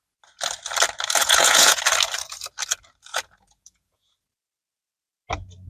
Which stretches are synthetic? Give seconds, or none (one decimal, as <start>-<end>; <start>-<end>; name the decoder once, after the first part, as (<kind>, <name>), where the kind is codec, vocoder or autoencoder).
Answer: 1.2-1.8 (vocoder, Vocos); 3.1-4.1